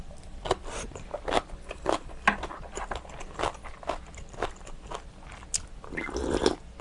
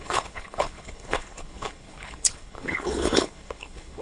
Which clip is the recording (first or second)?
first